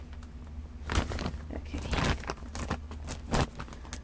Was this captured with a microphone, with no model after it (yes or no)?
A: yes